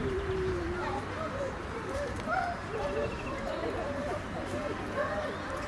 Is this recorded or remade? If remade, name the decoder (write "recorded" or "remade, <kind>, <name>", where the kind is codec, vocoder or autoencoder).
remade, vocoder, BigVGAN v2